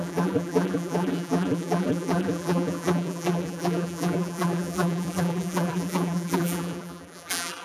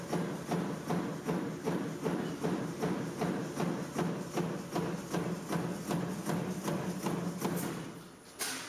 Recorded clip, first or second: second